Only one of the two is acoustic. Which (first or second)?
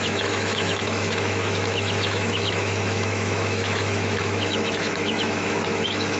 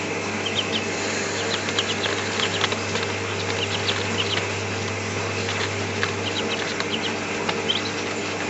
second